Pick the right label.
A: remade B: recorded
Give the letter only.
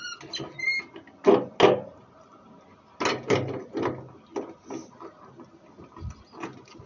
B